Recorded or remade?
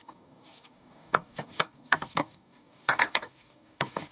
remade